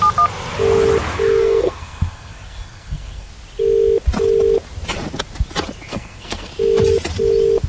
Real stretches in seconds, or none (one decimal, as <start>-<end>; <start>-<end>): 0.0-1.4; 3.3-5.9; 6.5-7.7